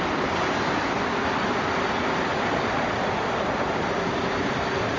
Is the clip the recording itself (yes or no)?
yes